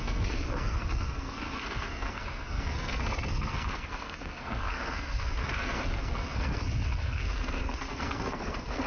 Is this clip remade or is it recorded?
remade